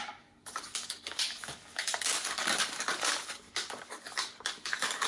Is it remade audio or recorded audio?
remade